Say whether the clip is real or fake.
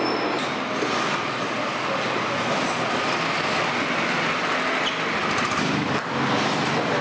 real